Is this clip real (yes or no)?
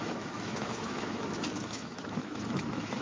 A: no